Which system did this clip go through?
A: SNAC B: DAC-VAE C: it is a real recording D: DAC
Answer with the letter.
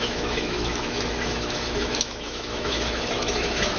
B